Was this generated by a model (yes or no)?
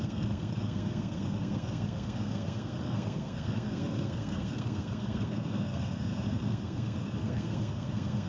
yes